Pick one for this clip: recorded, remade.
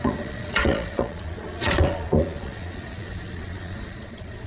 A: remade